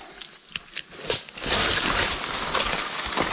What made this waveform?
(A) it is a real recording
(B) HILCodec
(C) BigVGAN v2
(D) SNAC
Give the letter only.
A